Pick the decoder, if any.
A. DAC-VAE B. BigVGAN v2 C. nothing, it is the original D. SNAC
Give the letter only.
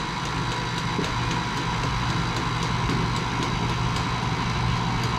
C